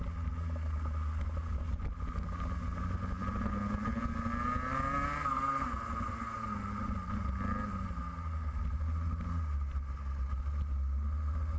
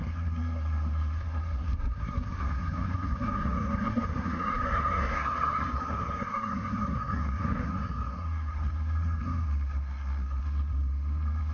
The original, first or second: first